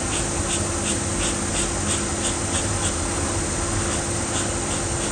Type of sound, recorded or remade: recorded